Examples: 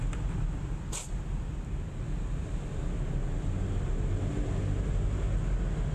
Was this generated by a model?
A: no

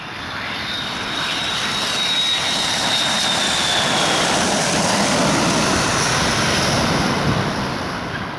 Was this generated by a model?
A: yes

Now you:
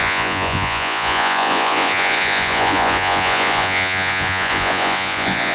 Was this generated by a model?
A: yes